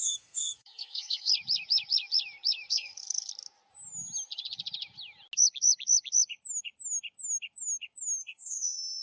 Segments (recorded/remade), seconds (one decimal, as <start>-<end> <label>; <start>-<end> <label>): 0.0-1.3 remade; 1.3-2.7 recorded; 2.7-3.3 remade; 3.3-8.2 recorded; 8.2-9.0 remade